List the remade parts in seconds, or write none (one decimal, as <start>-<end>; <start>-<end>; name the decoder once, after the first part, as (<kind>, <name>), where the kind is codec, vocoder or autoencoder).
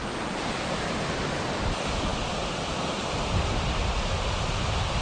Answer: none